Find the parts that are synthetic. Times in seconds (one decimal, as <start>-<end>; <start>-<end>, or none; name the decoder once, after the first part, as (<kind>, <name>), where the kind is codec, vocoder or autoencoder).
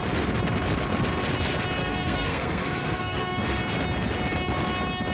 1.8-3.6 (codec, SNAC)